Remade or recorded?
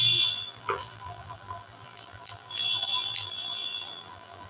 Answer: remade